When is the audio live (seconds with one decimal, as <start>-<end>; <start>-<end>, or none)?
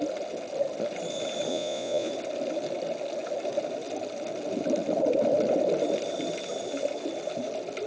0.0-1.5; 2.1-7.9